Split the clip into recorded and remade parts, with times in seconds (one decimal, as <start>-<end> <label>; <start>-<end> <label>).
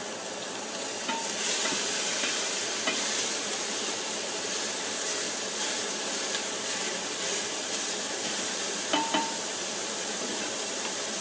0.0-11.2 remade